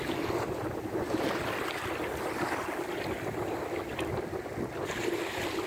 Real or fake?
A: real